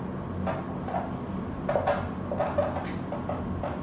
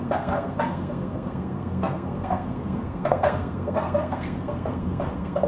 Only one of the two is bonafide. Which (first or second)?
first